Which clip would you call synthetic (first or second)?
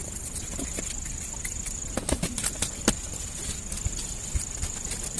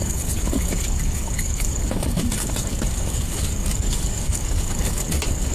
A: second